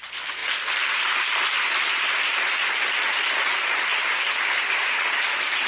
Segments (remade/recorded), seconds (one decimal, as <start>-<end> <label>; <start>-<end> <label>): 0.0-3.9 recorded; 3.9-4.7 remade; 4.7-5.7 recorded